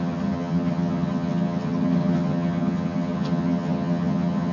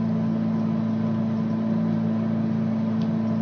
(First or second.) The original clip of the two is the second